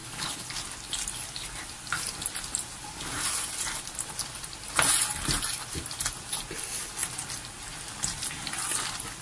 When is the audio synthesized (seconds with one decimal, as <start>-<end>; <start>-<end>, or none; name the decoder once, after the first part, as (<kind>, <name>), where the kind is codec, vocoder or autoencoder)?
0.0-0.5 (codec, HILCodec)